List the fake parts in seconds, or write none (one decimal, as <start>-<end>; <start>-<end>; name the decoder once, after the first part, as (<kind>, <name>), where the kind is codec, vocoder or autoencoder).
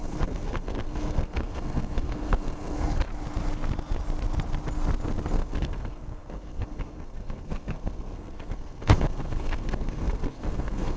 0.0-3.1 (codec, SNAC); 5.3-11.0